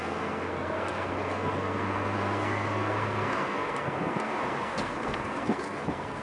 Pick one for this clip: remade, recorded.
remade